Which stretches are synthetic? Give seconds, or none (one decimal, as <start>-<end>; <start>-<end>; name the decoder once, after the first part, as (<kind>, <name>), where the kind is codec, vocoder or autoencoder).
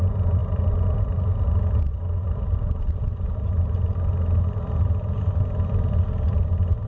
none